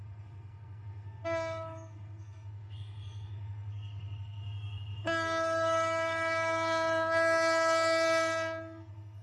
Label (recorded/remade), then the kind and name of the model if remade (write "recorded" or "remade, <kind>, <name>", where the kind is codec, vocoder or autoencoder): remade, codec, SNAC